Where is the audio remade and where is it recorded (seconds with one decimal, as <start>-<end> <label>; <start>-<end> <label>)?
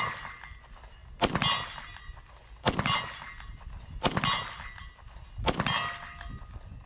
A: 0.0-6.9 recorded